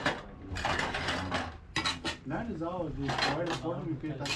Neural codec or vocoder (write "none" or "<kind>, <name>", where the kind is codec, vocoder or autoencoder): none